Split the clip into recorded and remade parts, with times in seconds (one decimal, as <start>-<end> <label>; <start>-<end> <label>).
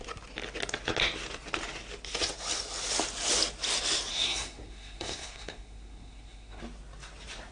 0.0-4.1 recorded; 4.1-6.6 remade; 6.6-7.5 recorded